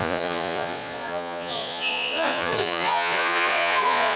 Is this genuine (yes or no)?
no